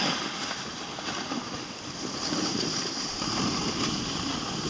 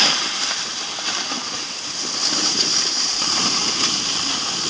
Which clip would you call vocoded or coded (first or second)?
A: second